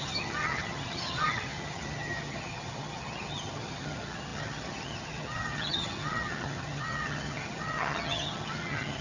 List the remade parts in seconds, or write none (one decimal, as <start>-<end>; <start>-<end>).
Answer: 0.0-9.0